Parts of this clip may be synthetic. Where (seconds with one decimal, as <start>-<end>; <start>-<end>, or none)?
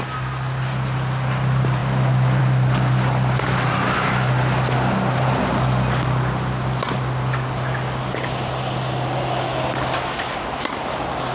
none